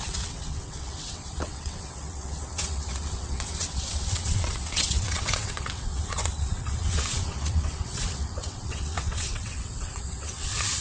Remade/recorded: remade